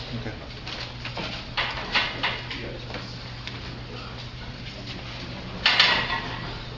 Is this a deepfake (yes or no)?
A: no